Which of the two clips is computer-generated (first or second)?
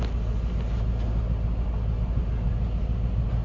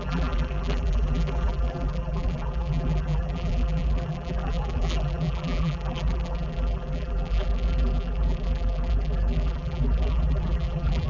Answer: second